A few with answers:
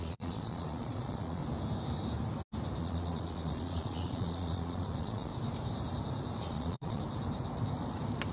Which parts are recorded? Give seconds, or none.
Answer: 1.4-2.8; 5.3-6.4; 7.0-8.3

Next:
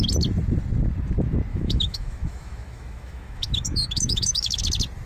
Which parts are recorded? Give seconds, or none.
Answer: 0.0-1.5; 4.6-5.1

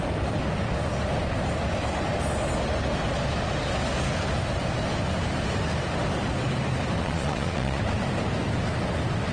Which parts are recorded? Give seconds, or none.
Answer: 0.0-7.0; 7.8-9.3

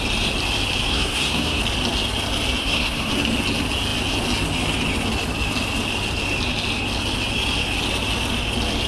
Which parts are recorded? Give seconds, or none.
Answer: 0.0-0.9; 1.6-2.6; 3.1-8.9